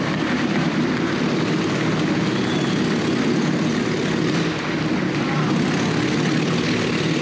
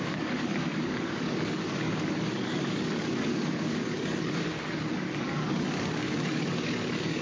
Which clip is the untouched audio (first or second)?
first